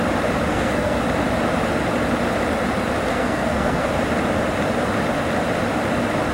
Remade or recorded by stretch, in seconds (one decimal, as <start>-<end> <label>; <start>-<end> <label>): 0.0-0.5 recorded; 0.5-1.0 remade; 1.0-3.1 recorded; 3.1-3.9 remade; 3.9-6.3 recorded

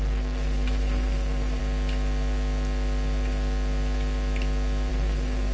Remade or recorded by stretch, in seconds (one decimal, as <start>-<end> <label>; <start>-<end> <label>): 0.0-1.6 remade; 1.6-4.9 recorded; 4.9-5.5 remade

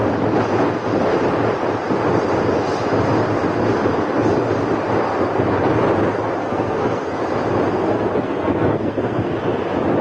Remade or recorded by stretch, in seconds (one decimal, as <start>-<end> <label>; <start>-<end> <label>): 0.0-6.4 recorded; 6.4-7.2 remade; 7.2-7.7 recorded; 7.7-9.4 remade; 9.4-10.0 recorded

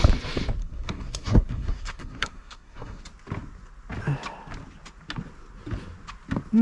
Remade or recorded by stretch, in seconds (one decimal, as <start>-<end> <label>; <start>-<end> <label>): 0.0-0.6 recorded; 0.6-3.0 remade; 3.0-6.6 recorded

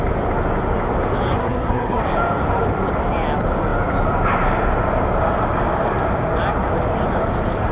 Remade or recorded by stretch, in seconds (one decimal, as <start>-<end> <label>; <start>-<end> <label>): 0.0-1.4 recorded; 1.4-2.0 remade; 2.0-7.7 recorded

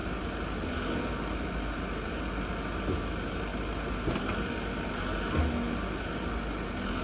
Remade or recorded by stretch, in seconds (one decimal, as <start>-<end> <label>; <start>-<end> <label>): 0.0-7.0 recorded